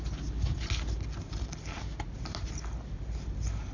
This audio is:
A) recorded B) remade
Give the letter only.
A